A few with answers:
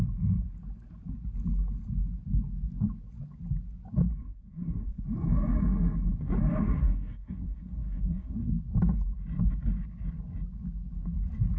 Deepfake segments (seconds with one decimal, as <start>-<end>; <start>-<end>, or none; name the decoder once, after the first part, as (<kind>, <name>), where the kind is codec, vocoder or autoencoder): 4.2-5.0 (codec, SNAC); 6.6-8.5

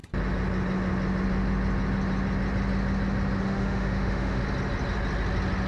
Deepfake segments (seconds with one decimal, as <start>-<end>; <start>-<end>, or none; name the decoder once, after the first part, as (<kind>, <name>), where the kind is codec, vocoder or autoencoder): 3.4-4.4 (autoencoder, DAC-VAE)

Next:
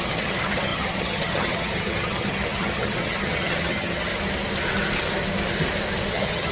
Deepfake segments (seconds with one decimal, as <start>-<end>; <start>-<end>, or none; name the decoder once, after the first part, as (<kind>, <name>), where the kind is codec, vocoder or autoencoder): 0.0-4.1 (vocoder, HiFi-GAN); 6.1-6.5

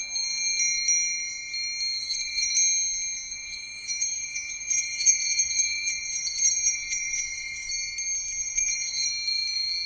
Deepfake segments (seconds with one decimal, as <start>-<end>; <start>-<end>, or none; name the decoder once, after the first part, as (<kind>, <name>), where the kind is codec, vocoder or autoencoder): 2.0-2.5 (vocoder, Vocos); 3.3-7.7; 8.4-9.1

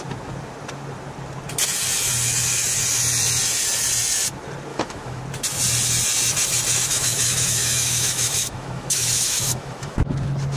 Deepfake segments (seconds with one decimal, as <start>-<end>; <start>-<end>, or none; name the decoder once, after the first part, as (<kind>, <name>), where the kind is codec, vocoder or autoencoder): 4.7-5.2 (autoencoder, DAC-VAE); 6.8-10.1

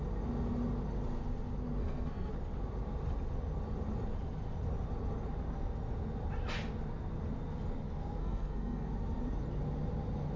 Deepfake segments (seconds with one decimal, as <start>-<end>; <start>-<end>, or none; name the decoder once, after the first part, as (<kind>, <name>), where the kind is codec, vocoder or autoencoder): 1.8-2.3 (codec, SNAC); 8.2-8.9